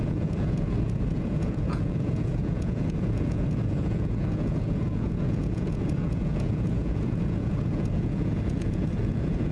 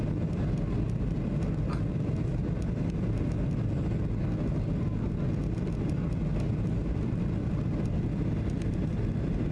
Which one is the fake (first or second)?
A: first